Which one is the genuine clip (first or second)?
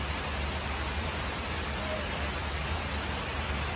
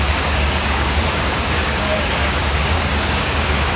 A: first